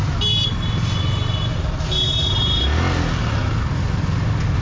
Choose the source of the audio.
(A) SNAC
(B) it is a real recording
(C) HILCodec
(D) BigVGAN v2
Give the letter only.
B